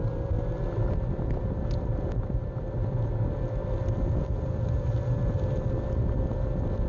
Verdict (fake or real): real